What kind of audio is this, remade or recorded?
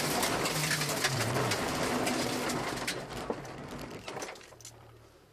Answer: recorded